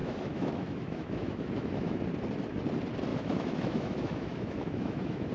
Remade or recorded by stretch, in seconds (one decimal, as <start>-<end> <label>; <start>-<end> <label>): 0.0-2.0 remade; 2.0-3.1 recorded; 3.1-5.3 remade